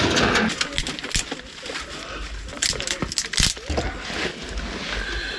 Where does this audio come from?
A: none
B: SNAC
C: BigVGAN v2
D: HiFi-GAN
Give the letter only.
A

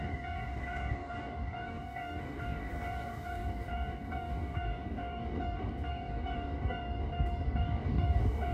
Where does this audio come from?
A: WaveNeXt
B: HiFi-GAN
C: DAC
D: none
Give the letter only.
C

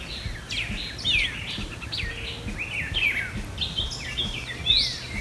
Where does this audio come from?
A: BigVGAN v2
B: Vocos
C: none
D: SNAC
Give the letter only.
C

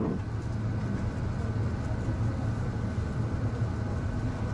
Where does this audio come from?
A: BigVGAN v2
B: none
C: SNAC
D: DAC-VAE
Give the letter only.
B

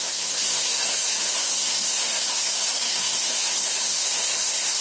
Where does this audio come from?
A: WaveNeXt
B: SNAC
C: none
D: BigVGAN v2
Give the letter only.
B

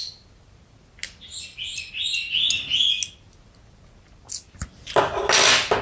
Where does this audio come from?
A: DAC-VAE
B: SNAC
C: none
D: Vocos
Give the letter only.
C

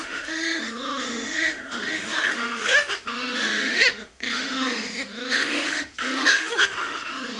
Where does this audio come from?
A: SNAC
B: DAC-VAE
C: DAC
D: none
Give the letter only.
B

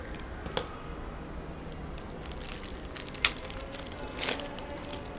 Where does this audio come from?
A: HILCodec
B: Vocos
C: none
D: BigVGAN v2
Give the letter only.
C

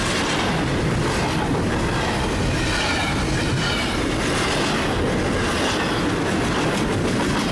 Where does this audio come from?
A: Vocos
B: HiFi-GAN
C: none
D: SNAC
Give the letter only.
C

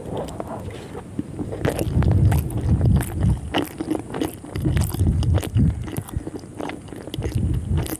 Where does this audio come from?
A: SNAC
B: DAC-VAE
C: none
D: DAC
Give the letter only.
C